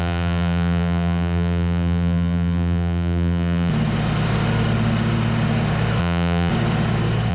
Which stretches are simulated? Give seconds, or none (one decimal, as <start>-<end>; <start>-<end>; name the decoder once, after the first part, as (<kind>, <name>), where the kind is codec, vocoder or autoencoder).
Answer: 0.0-3.7 (vocoder, BigVGAN v2); 6.0-6.5

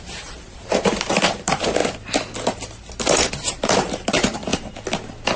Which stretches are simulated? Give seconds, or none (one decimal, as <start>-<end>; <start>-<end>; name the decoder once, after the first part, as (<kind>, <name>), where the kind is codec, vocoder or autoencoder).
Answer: 0.0-1.8 (vocoder, BigVGAN v2); 3.3-4.5

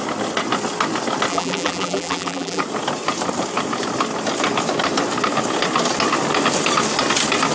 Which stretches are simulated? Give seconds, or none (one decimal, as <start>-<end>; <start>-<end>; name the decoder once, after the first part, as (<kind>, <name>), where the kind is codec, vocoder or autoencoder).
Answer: 1.3-2.6 (vocoder, BigVGAN v2)

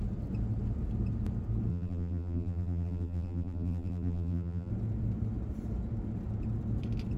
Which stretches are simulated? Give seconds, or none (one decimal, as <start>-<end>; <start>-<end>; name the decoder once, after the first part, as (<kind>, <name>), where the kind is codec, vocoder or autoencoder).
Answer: 1.7-4.7 (vocoder, BigVGAN v2)